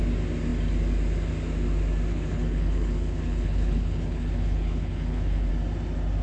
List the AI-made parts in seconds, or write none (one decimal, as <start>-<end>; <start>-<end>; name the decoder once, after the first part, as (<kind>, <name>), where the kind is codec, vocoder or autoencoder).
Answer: 2.1-5.5 (codec, HILCodec)